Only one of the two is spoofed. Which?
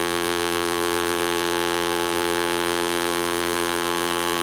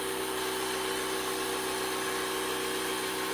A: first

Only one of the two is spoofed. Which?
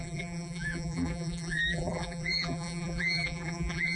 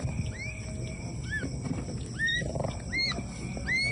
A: first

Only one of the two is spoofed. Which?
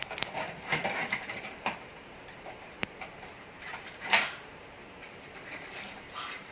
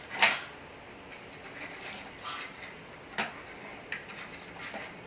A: first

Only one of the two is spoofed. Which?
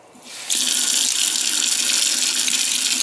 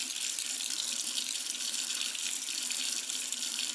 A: second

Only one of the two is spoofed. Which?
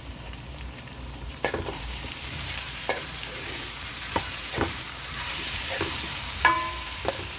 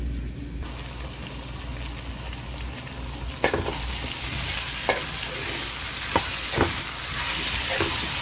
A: first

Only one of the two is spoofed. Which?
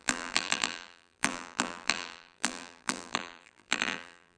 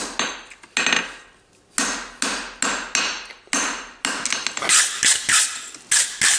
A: first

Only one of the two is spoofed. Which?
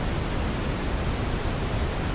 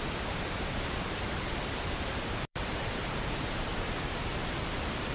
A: second